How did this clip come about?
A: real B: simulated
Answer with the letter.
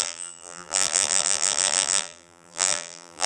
B